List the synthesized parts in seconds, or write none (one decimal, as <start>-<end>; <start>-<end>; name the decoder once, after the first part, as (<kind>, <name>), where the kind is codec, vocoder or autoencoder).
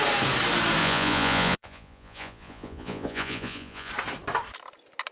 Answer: 0.8-3.9 (vocoder, Vocos)